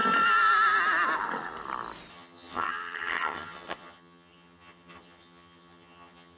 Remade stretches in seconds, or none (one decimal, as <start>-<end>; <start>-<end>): 2.1-6.4